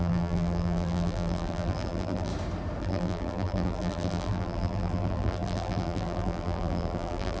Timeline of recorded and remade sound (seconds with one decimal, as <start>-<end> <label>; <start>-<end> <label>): 0.0-2.3 remade; 2.3-2.8 recorded; 2.8-7.4 remade